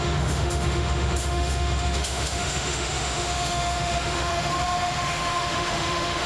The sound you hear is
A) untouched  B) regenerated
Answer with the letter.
B